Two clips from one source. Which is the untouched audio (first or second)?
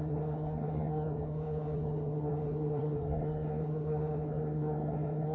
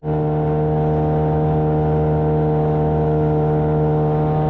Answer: second